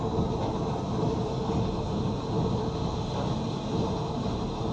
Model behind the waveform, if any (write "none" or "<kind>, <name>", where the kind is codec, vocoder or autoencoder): none